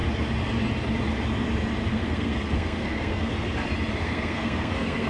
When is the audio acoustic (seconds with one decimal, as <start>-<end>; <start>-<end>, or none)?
0.0-1.9; 3.3-4.0